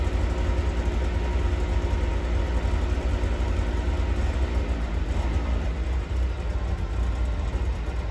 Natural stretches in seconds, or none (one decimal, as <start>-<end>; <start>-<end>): 0.0-8.1